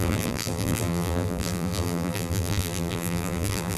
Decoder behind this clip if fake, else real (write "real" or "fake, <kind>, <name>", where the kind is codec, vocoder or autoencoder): fake, vocoder, BigVGAN v2